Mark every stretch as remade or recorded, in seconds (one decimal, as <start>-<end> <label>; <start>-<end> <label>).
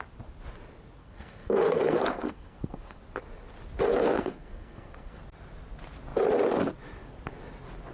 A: 0.0-1.0 recorded; 1.0-3.0 remade; 3.0-3.9 recorded; 3.9-5.2 remade; 5.2-7.9 recorded